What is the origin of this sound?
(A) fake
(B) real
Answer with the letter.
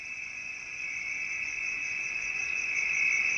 A